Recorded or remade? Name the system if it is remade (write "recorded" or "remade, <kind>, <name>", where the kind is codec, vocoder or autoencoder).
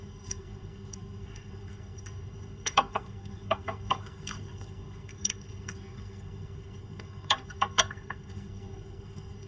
remade, codec, SNAC